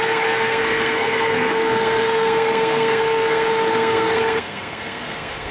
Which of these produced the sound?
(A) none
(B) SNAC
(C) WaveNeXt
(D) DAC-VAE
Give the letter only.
B